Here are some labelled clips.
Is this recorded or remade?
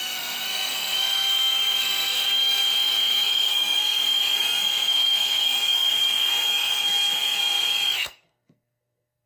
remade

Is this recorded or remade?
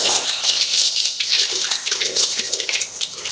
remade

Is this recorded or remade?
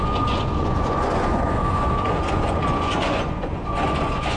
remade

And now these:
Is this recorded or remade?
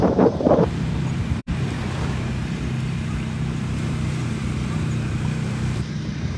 remade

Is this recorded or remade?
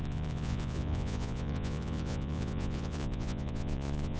remade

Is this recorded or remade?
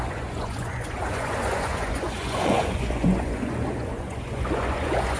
remade